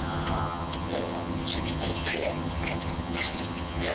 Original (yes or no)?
no